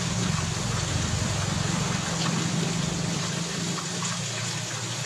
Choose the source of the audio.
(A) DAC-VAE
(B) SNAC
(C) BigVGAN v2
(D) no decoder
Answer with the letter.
D